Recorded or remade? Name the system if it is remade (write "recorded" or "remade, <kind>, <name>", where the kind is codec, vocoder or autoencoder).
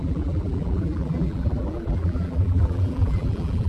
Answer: remade, vocoder, BigVGAN v2